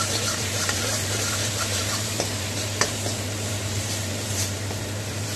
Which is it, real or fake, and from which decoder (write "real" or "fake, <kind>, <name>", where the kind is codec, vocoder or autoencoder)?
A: fake, vocoder, BigVGAN v2